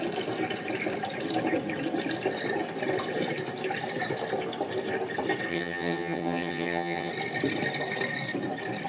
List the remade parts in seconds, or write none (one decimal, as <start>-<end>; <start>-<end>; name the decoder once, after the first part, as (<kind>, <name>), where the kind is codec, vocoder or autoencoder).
5.5-7.1 (vocoder, HiFi-GAN)